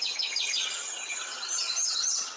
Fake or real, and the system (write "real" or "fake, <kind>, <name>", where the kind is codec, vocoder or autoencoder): fake, vocoder, HiFi-GAN